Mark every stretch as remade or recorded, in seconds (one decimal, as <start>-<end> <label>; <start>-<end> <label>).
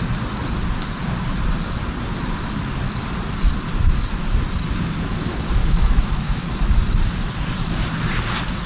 0.0-5.6 recorded; 5.6-6.5 remade; 6.5-8.7 recorded